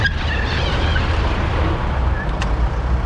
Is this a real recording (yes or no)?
yes